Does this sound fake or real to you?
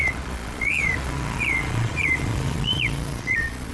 fake